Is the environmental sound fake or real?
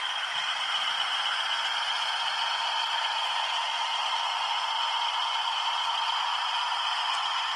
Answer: real